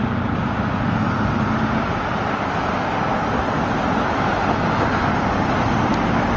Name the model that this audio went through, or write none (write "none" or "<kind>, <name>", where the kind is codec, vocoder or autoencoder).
none